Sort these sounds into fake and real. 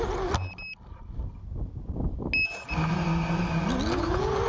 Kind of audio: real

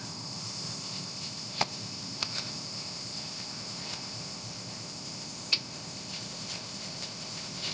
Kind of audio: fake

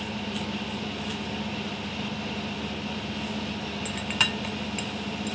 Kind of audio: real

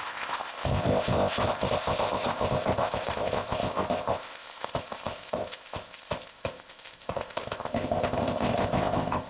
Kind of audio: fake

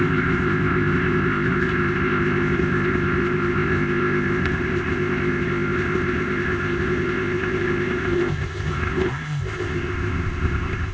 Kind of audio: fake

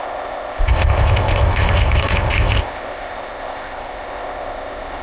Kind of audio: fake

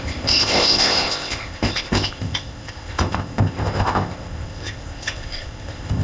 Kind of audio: fake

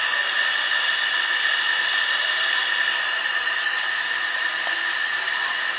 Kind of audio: real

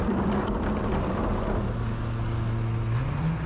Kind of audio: real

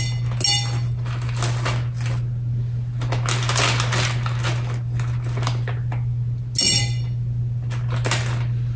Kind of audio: real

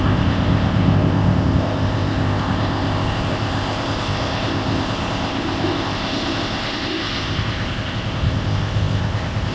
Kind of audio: fake